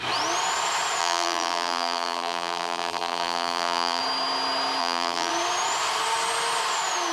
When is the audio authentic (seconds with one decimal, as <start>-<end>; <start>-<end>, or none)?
0.0-1.0; 4.0-4.8; 5.3-7.1